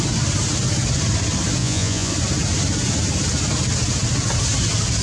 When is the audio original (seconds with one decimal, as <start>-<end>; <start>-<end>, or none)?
0.0-1.6; 2.1-5.0